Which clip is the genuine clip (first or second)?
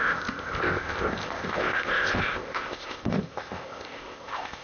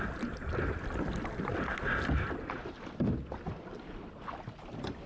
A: second